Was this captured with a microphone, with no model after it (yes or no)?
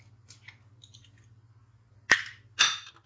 yes